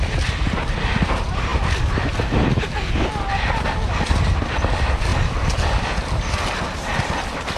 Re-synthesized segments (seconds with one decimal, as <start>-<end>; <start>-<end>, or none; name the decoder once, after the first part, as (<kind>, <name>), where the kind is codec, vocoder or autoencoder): none